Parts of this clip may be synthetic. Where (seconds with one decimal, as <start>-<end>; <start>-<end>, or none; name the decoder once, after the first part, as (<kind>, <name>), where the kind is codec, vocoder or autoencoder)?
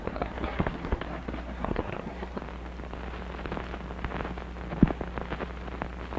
0.0-2.4 (codec, SNAC)